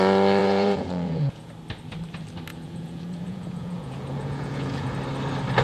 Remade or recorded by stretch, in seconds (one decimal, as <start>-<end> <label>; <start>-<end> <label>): 0.0-0.4 recorded; 0.4-1.5 remade; 1.5-2.5 recorded; 2.5-4.9 remade; 4.9-5.6 recorded